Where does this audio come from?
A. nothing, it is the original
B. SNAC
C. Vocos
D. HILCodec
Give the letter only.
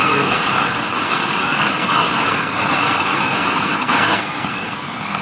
B